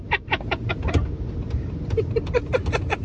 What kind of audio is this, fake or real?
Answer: fake